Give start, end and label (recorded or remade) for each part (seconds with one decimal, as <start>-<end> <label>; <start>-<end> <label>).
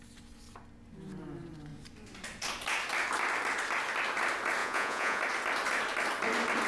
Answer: 0.0-4.6 recorded; 4.6-5.2 remade; 5.2-6.7 recorded